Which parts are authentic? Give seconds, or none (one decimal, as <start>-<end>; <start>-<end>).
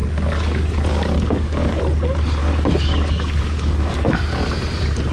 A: 1.8-2.4; 4.2-5.1